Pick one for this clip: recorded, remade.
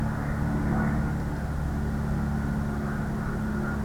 recorded